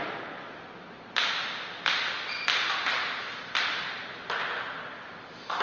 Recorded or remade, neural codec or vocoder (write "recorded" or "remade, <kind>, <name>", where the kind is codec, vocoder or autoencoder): recorded